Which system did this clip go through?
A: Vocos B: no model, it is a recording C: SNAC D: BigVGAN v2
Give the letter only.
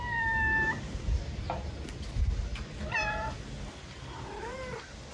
B